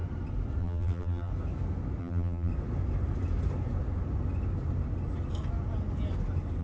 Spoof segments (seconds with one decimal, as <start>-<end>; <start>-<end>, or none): 0.6-1.3; 2.0-2.5